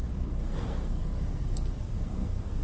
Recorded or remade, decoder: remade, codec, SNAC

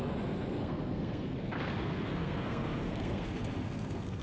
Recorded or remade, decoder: remade, codec, SNAC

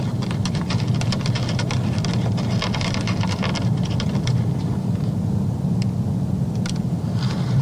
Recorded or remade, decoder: recorded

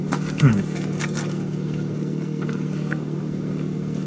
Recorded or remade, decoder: remade, codec, SNAC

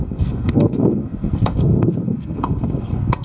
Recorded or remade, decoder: remade, codec, SNAC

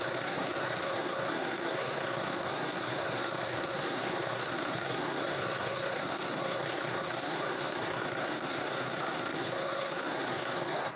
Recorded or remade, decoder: remade, codec, SNAC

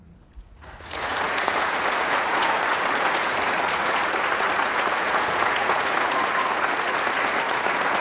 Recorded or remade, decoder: remade, vocoder, Vocos